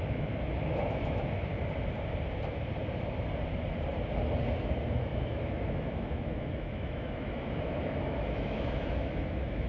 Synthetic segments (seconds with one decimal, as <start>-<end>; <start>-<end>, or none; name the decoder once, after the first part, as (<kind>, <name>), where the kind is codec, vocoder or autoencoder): 0.0-1.5 (autoencoder, DAC-VAE); 4.6-9.7